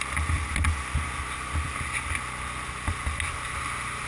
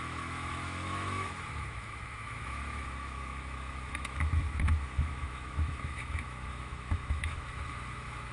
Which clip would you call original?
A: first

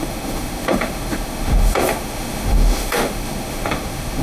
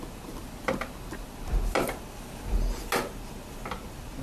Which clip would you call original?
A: second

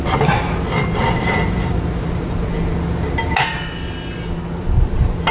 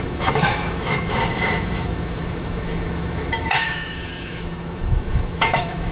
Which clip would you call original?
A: first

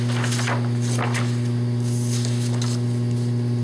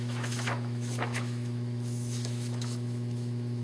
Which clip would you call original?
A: first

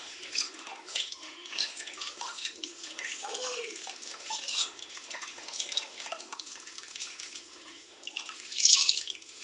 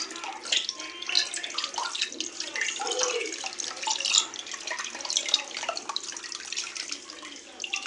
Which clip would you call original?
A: second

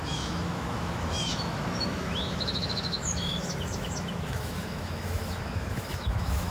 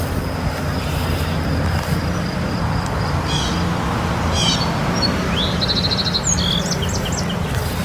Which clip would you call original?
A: second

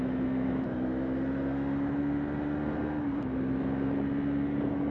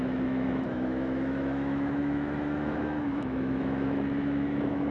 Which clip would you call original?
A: first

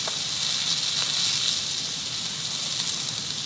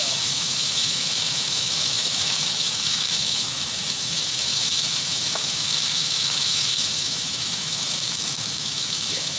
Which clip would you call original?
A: first